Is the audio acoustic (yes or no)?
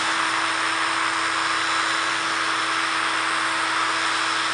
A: yes